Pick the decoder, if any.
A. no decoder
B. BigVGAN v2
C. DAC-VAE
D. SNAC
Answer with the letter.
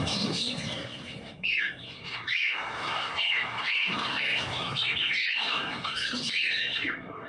D